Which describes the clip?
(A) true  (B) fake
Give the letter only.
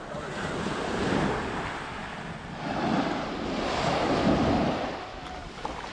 A